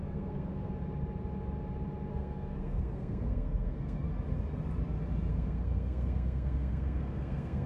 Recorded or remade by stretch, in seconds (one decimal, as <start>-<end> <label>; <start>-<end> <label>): 0.0-0.7 remade; 0.7-2.1 recorded; 2.1-4.1 remade; 4.1-5.3 recorded; 5.3-7.7 remade

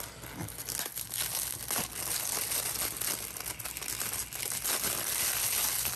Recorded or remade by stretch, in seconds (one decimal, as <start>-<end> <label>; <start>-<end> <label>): 0.0-6.0 recorded

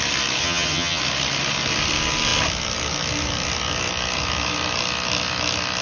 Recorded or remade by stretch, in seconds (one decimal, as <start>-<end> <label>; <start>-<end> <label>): 0.0-0.4 recorded; 0.4-1.0 remade; 1.0-5.8 recorded

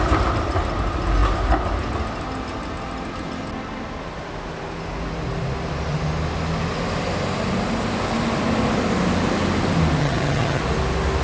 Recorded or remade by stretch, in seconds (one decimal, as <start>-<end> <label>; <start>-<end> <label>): 0.0-10.0 recorded; 10.0-10.6 remade; 10.6-11.2 recorded

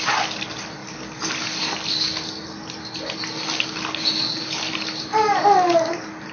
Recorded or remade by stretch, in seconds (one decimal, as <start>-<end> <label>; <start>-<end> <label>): 0.0-6.3 recorded

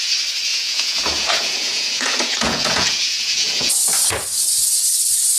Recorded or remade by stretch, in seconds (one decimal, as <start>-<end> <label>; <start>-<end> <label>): 0.0-0.5 recorded; 0.5-3.7 remade; 3.7-5.4 recorded